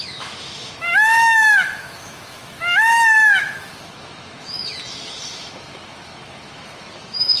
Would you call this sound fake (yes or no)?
yes